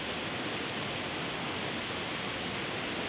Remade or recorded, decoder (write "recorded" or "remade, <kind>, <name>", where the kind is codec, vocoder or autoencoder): recorded